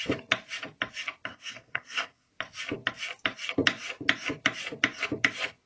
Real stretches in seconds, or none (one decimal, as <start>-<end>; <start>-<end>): 0.0-1.3; 2.3-5.7